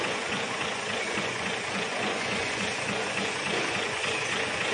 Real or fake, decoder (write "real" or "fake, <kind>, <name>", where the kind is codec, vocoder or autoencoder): fake, vocoder, Vocos